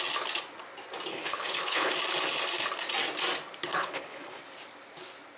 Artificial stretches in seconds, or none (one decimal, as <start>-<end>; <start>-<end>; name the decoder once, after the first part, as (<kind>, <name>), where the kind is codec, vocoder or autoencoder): 1.1-1.9 (codec, HILCodec); 3.7-4.4